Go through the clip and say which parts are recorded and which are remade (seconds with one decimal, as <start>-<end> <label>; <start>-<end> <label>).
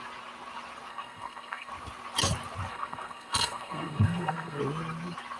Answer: 0.0-0.9 recorded; 0.9-1.7 remade; 1.7-2.7 recorded; 2.7-4.6 remade; 4.6-5.4 recorded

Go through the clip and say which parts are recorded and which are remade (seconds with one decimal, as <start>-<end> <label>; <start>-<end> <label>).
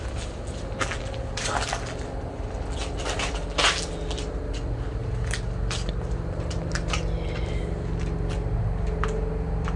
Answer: 0.0-9.8 recorded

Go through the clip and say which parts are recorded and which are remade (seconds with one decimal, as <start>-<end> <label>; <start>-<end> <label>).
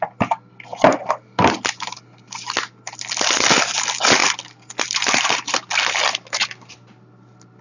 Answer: 0.0-7.6 recorded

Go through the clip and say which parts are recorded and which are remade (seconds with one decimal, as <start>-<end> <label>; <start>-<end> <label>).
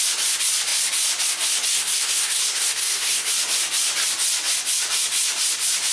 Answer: 0.0-1.7 recorded; 1.7-3.3 remade; 3.3-5.9 recorded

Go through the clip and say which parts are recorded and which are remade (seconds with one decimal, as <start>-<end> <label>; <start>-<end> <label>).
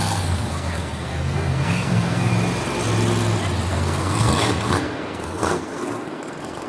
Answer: 0.0-2.3 remade; 2.3-3.7 recorded; 3.7-6.7 remade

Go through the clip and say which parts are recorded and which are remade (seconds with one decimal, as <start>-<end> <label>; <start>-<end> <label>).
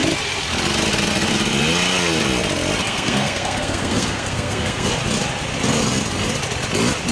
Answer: 0.0-2.8 recorded; 2.8-4.9 remade; 4.9-7.1 recorded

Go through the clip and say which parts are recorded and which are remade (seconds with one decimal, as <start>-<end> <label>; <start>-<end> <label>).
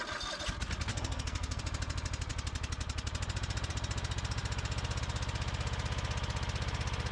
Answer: 0.0-0.9 recorded; 0.9-1.6 remade; 1.6-7.1 recorded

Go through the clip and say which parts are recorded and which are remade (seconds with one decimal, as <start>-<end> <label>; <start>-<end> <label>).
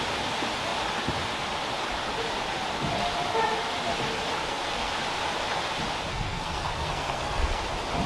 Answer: 0.0-4.4 recorded; 4.4-4.9 remade; 4.9-6.1 recorded; 6.1-7.6 remade; 7.6-8.1 recorded